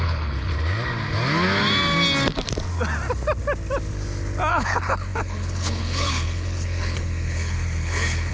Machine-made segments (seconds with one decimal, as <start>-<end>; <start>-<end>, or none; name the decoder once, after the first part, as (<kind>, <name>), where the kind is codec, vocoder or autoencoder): 0.0-0.5 (codec, HILCodec); 4.5-8.3